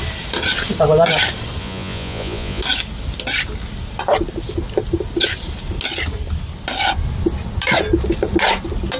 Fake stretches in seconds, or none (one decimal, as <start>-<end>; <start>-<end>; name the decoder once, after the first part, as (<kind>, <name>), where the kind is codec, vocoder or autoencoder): 1.6-2.6 (vocoder, Vocos)